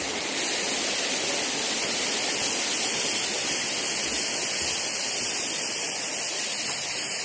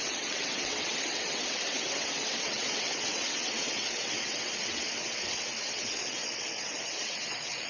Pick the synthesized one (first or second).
second